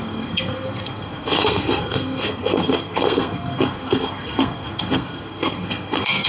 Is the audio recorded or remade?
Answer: remade